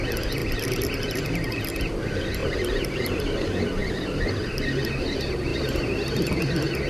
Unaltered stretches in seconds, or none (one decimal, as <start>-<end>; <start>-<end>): 0.0-2.4; 3.2-5.5; 6.3-6.9